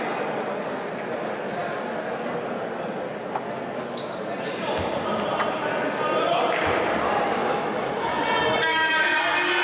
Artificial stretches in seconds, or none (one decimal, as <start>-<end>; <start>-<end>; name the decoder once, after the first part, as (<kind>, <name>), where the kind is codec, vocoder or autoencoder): 7.4-8.2 (autoencoder, DAC-VAE); 8.7-9.2